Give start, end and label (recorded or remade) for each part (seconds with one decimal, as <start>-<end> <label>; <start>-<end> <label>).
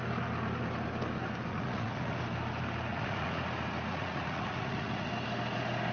0.0-1.5 recorded; 1.5-2.2 remade; 2.2-2.9 recorded; 2.9-3.4 remade; 3.4-3.9 recorded; 3.9-5.1 remade; 5.1-5.9 recorded